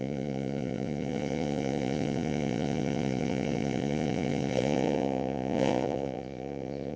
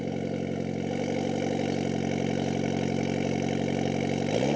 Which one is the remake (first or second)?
first